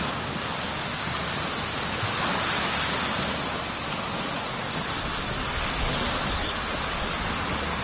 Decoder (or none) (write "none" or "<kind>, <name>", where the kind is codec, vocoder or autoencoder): none